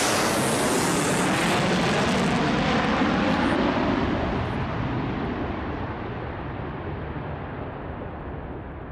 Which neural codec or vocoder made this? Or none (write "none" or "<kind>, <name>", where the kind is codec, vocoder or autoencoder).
none